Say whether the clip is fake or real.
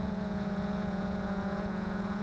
fake